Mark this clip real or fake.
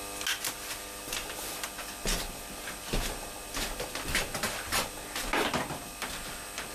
real